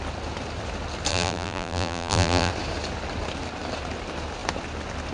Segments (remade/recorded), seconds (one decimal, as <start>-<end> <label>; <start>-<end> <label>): 0.0-1.1 recorded; 1.1-2.5 remade; 2.5-5.1 recorded